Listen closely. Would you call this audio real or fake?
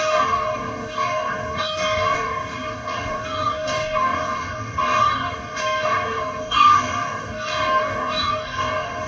fake